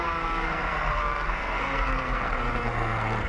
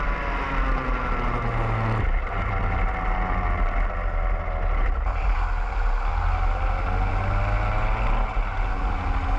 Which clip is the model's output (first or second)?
first